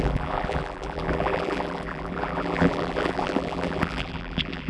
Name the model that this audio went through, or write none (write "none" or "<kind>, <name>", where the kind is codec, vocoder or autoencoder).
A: vocoder, BigVGAN v2